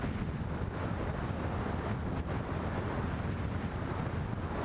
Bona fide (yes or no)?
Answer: yes